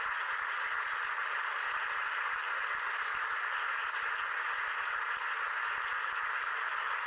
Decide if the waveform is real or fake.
real